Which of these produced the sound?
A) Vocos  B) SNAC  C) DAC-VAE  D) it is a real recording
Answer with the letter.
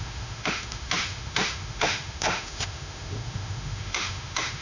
C